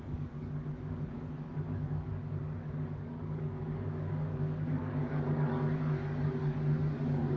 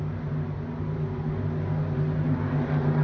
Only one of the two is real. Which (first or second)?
second